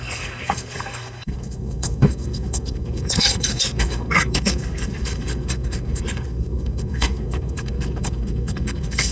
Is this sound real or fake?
fake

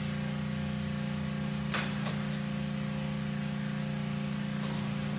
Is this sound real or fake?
real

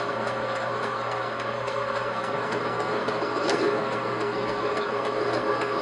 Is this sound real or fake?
fake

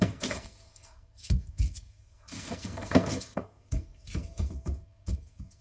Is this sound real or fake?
fake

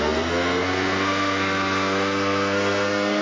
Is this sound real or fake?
fake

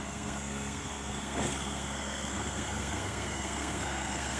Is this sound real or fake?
fake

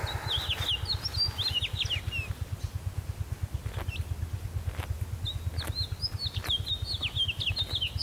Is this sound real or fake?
real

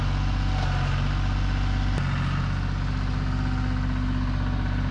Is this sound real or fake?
real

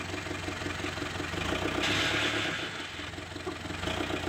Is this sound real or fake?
real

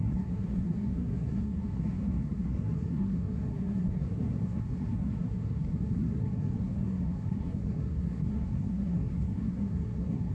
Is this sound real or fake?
fake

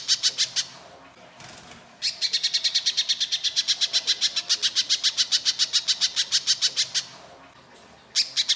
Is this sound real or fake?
real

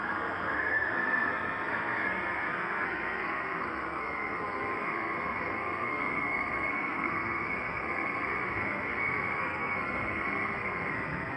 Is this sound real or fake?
fake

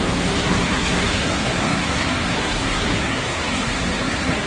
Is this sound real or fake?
fake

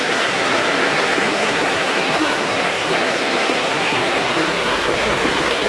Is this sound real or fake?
fake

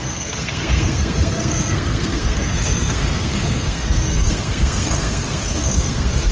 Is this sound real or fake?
fake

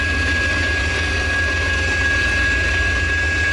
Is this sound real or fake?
real